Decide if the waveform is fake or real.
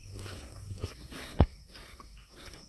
fake